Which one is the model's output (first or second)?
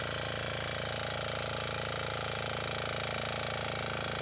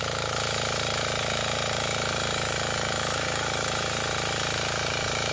second